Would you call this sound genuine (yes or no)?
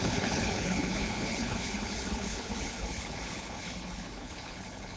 no